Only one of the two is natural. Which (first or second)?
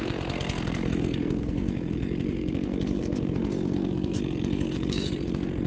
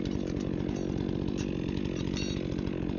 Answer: second